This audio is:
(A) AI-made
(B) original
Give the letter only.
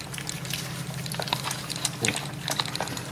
B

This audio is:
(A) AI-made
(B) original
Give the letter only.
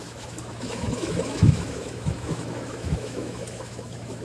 A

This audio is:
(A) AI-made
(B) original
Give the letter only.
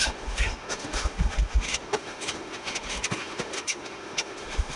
A